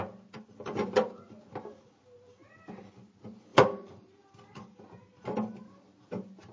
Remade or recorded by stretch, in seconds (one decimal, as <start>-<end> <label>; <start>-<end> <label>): 0.0-3.5 recorded; 3.5-4.9 remade; 4.9-6.5 recorded